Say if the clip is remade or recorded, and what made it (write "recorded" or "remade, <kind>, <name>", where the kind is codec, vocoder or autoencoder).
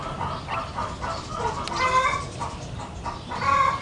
recorded